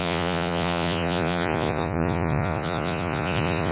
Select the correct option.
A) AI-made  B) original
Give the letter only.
A